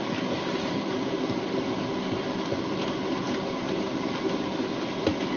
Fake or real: real